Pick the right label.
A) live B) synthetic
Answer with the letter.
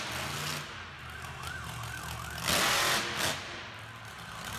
A